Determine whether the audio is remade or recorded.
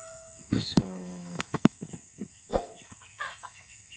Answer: remade